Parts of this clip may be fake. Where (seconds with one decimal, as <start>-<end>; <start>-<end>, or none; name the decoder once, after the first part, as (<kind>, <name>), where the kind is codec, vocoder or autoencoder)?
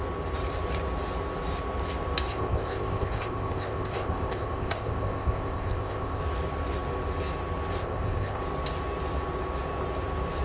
2.3-6.2 (codec, ZipCodec); 7.8-8.4